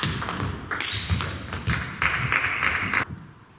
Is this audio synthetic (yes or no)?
no